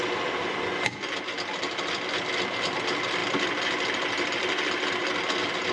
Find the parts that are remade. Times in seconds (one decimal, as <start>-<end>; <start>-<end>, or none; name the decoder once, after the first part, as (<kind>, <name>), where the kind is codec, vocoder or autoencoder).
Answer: 3.2-4.9 (vocoder, BigVGAN v2)